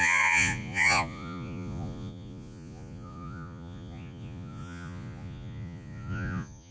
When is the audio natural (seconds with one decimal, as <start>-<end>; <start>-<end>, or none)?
none